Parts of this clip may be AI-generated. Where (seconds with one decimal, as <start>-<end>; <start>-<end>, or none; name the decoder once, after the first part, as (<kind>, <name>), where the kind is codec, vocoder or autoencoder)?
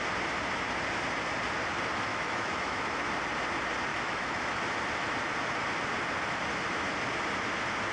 2.1-3.0 (autoencoder, DAC-VAE); 3.9-4.6